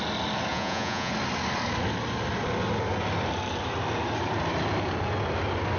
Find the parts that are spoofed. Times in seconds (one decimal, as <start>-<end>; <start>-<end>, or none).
0.5-1.1